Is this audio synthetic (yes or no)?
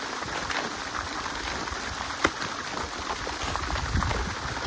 no